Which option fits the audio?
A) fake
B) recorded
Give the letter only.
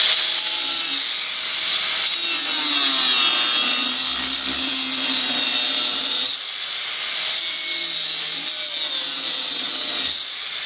B